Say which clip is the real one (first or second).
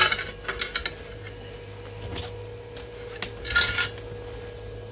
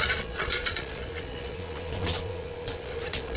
first